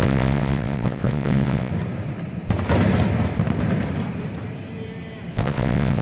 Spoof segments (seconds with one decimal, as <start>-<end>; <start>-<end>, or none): 0.0-1.7; 5.3-6.0